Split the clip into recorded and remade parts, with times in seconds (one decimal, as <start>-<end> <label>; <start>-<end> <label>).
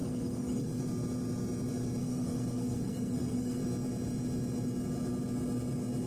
0.0-0.8 remade; 0.8-2.0 recorded; 2.0-3.6 remade; 3.6-6.1 recorded